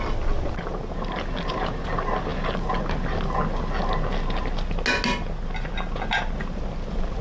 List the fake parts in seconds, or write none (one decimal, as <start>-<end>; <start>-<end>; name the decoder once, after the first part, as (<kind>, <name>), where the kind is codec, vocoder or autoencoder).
none